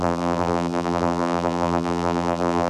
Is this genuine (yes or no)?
no